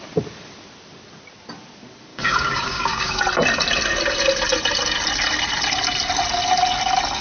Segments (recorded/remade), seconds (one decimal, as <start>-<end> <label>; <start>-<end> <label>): 0.0-2.1 recorded; 2.1-3.2 remade; 3.2-7.2 recorded